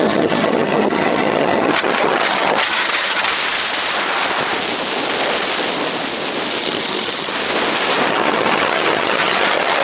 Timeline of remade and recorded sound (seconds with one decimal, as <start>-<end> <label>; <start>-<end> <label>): 0.0-3.3 remade; 3.3-6.6 recorded; 6.6-7.3 remade; 7.3-8.1 recorded; 8.1-9.8 remade